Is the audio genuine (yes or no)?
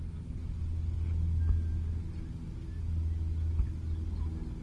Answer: yes